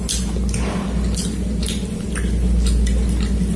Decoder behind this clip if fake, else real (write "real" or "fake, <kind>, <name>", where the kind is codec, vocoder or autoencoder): real